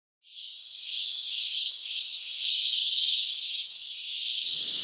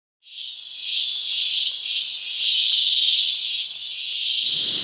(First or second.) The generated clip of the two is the first